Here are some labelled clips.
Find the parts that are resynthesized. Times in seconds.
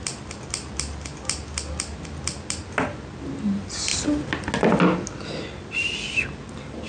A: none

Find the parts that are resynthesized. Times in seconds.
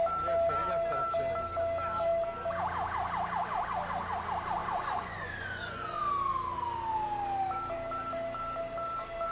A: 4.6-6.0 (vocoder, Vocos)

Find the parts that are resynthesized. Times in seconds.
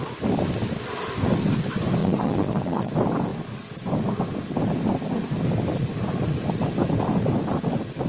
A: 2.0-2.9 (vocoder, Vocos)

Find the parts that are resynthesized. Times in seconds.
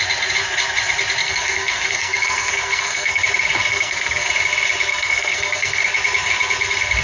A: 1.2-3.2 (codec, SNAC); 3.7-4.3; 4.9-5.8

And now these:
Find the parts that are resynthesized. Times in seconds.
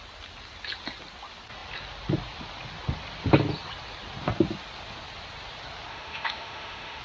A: 5.9-7.0 (autoencoder, DAC-VAE)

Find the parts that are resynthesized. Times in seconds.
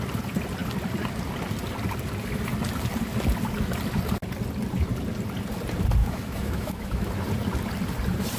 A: 6.0-7.1 (autoencoder, DAC-VAE)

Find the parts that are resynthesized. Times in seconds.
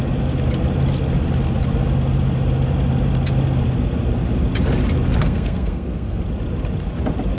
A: 5.2-6.2 (codec, SNAC)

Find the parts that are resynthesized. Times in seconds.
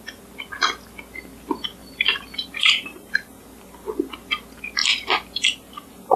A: 1.8-3.4 (vocoder, BigVGAN v2)